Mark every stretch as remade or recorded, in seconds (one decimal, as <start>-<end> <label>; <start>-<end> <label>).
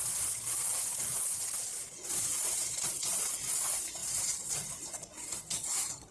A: 0.0-6.1 remade